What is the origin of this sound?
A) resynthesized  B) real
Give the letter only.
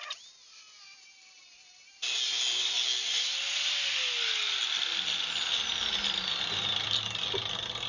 B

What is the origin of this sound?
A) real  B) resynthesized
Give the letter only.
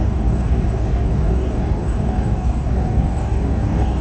B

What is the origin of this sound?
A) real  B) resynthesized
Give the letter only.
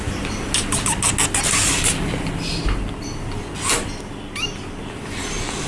A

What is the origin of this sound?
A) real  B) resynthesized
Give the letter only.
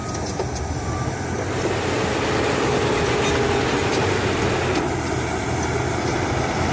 A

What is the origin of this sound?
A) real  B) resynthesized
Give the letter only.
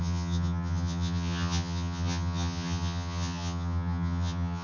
B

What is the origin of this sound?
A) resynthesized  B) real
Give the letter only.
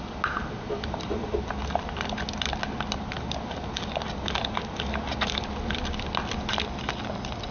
B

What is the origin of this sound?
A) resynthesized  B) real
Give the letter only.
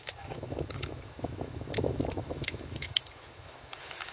A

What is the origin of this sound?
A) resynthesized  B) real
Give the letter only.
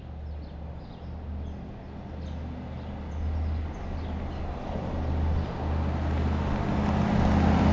B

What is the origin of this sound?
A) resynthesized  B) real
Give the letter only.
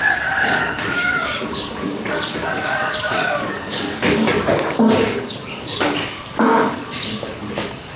A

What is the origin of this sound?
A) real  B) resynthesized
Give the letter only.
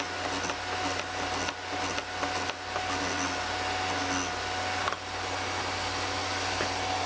A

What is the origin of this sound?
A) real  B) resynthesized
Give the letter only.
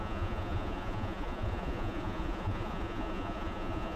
B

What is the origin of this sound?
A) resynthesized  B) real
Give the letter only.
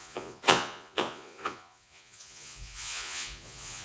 A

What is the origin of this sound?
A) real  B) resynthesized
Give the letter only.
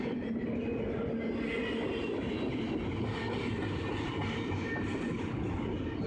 A